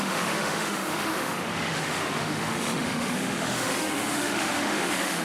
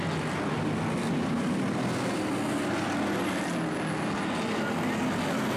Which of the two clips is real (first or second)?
second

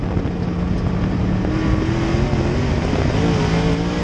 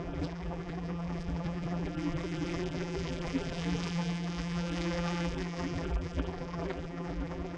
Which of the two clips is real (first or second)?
first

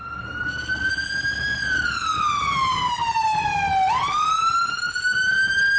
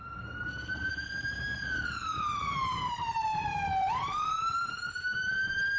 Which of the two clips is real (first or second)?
first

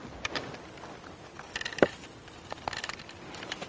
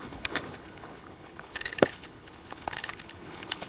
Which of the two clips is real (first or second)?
first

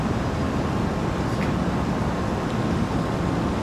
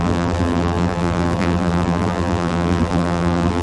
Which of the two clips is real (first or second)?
first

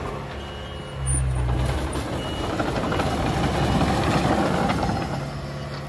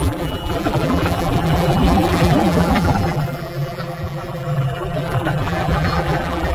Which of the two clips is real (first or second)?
first